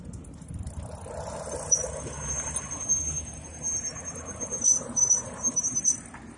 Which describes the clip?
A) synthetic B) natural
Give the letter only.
B